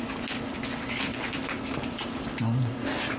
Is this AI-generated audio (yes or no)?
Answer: no